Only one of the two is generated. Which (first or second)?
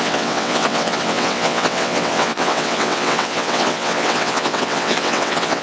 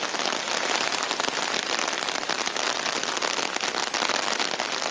first